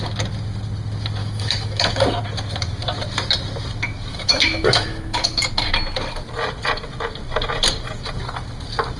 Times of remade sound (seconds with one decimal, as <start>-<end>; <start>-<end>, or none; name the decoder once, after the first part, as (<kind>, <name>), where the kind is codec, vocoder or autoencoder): 1.2-2.2 (autoencoder, DAC-VAE); 4.1-5.5